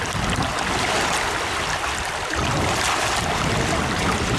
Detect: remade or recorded recorded